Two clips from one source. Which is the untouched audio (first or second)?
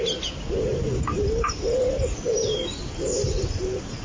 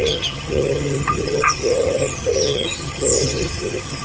first